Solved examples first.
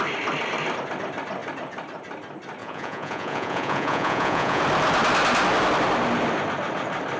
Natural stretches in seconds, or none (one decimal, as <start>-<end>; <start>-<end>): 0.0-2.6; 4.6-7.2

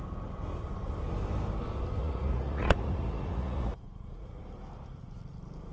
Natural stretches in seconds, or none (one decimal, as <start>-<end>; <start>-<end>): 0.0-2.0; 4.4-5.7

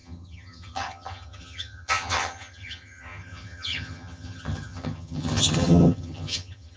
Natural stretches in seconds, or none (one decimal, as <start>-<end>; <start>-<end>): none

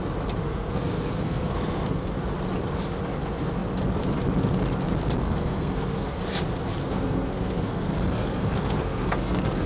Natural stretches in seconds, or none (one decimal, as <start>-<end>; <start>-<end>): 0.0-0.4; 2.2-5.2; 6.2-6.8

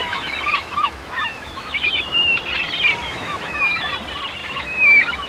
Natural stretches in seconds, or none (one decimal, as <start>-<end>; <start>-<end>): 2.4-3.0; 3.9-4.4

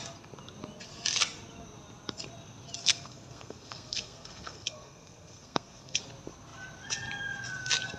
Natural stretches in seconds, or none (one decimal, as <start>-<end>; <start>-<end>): 0.0-2.8; 6.0-8.0